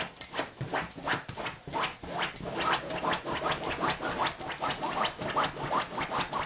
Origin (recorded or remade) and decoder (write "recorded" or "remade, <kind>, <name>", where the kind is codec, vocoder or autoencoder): recorded